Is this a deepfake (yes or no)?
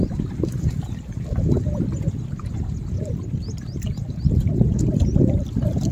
no